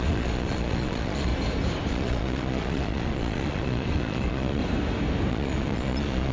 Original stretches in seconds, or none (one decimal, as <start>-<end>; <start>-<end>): 1.3-1.9; 4.6-5.3